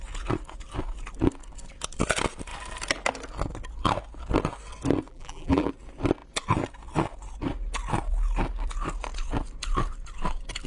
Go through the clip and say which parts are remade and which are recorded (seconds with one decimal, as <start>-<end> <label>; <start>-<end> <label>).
0.0-5.1 recorded; 5.1-5.7 remade; 5.7-10.7 recorded